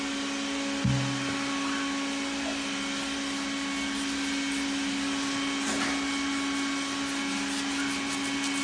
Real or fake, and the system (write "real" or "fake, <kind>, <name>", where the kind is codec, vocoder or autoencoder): real